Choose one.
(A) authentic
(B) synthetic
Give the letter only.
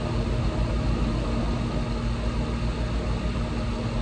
A